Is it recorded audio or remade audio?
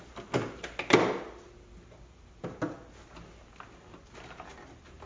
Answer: recorded